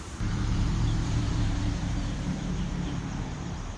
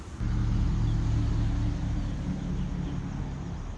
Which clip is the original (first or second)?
second